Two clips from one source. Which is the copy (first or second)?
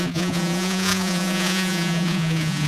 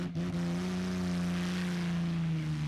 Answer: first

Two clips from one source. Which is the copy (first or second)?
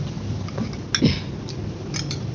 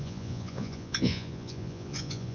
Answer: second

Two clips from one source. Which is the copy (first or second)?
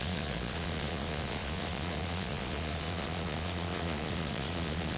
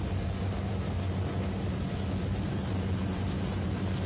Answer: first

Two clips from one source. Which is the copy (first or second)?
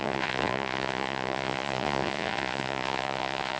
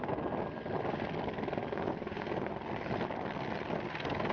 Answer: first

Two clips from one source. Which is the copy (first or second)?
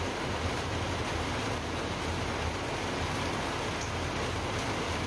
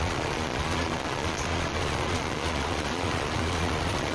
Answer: second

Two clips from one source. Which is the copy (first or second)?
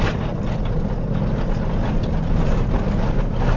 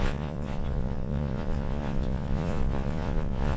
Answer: second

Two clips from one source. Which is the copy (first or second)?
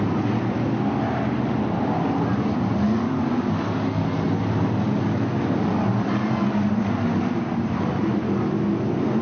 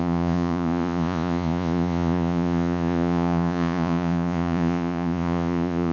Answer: second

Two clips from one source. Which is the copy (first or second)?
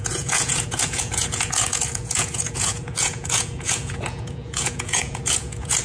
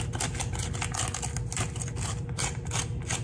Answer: first